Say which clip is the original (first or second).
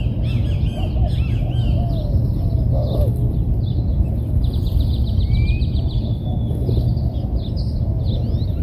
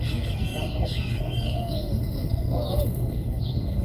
first